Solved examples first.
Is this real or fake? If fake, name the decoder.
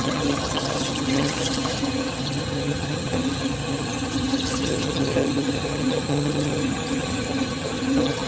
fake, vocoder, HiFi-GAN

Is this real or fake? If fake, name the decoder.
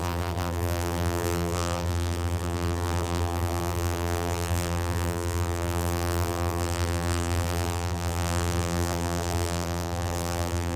fake, vocoder, BigVGAN v2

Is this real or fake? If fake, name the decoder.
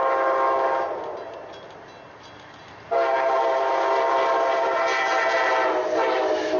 real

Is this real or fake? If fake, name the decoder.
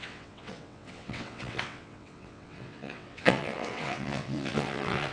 fake, vocoder, WaveNeXt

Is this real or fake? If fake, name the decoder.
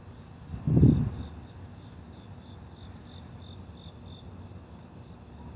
real